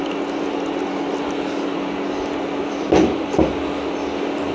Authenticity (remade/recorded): recorded